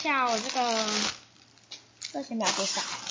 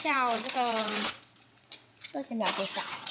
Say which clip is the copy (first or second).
second